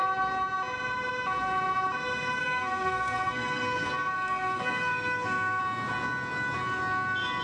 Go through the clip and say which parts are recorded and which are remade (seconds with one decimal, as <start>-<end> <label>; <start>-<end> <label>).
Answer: 0.0-2.4 recorded; 2.4-5.6 remade; 5.6-7.4 recorded